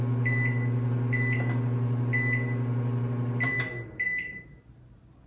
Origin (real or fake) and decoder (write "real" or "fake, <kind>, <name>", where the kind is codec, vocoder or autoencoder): real